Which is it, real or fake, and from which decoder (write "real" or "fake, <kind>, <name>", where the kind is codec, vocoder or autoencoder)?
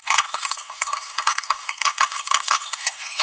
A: fake, codec, SNAC